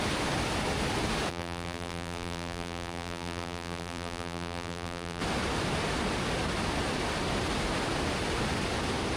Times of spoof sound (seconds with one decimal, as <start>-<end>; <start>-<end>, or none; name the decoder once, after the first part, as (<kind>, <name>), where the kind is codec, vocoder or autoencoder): 1.3-5.2 (vocoder, BigVGAN v2)